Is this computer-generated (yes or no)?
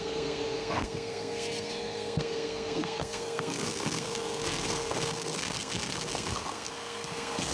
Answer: yes